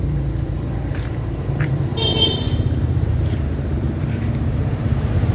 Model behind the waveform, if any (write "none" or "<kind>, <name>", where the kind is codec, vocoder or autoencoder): vocoder, BigVGAN v2